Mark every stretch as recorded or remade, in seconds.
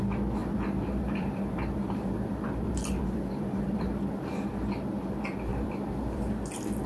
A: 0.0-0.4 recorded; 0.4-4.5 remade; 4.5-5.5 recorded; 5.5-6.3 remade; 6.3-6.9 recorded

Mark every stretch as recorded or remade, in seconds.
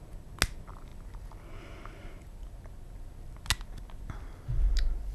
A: 0.0-5.1 recorded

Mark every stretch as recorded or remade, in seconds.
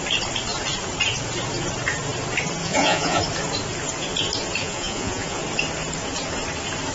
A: 0.0-2.6 recorded; 2.6-3.2 remade; 3.2-4.6 recorded; 4.6-5.4 remade; 5.4-6.9 recorded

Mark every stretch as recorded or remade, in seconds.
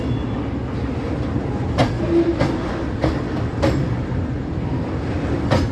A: 0.0-1.8 recorded; 1.8-4.5 remade; 4.5-5.7 recorded